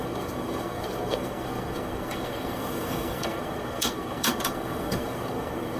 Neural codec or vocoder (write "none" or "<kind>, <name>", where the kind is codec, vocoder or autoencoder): codec, SNAC